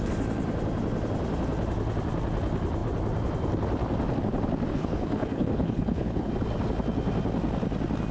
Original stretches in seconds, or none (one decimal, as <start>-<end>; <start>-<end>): 0.0-4.7; 6.3-8.1